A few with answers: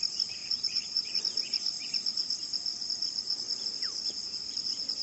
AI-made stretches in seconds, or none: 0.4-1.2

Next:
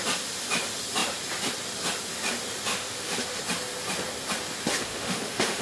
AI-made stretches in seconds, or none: 2.7-3.4; 4.7-5.6

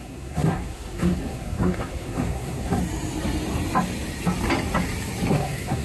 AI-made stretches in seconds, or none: 0.0-2.8; 5.3-5.8

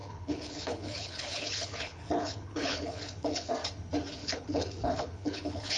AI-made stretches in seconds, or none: 0.0-3.5; 4.2-5.8